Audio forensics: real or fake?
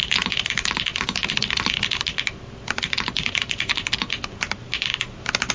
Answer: real